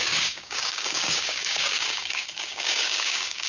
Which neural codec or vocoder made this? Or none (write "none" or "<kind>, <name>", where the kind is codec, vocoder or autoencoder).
codec, DAC